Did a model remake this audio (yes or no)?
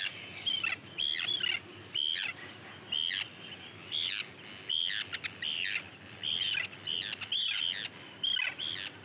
no